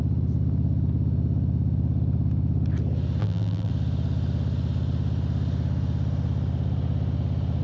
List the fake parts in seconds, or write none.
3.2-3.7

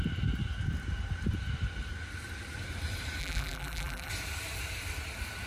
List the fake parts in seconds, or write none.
3.2-4.1

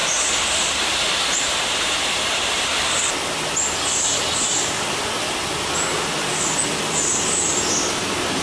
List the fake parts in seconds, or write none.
0.0-3.0; 4.5-5.0; 5.9-6.6

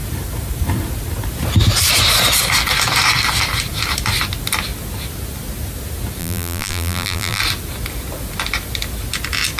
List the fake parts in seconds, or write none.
6.2-7.4

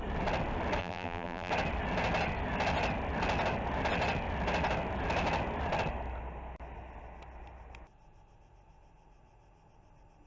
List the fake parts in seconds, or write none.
0.8-1.5

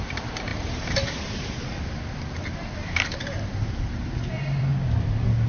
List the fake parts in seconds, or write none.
0.0-4.7

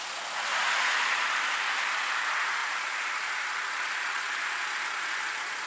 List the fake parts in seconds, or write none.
2.6-4.2